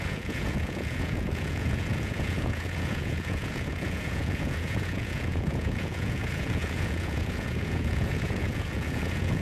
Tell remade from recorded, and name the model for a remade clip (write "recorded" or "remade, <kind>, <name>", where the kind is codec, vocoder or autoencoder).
remade, vocoder, Vocos